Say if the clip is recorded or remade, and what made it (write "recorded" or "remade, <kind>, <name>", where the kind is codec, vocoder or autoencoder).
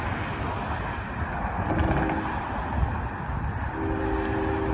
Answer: recorded